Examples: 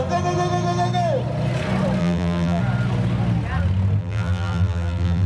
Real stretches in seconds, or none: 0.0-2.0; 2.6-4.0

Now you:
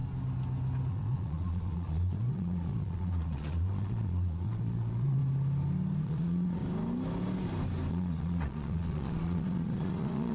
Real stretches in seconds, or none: 0.0-0.9; 5.2-6.0; 6.6-7.9